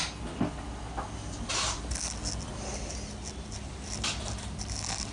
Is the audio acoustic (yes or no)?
yes